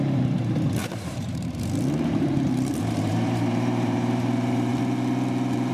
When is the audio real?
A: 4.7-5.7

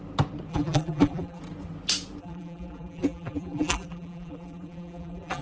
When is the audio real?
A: 0.0-0.5; 1.4-2.2

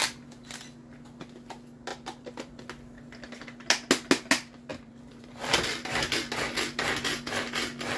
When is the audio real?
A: 0.0-1.9; 2.6-4.7; 5.4-8.0

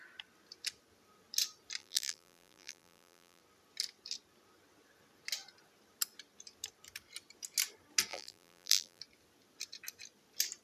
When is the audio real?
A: 0.0-1.8; 3.4-8.1; 9.0-10.6

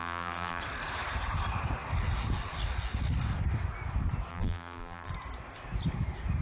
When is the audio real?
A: 0.6-4.3; 5.1-6.4